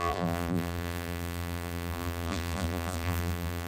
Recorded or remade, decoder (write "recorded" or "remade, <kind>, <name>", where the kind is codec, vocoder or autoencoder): remade, vocoder, BigVGAN v2